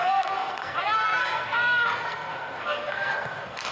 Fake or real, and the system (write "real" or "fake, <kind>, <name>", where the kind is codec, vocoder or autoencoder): fake, codec, SNAC